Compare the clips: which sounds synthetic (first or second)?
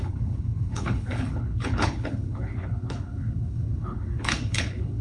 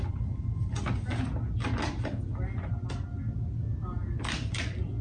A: first